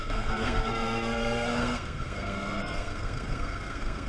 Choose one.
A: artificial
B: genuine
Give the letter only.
A